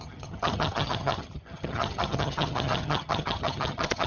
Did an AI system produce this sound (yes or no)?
yes